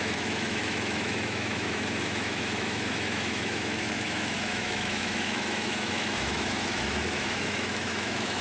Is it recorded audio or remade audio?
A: remade